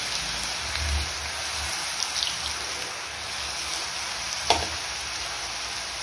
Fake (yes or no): no